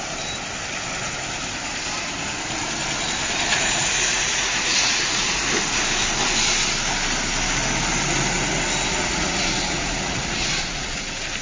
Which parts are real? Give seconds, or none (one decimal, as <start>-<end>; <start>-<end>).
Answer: 0.0-3.5; 5.5-8.9; 11.0-11.4